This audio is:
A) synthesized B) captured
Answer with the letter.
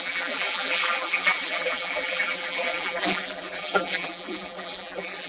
A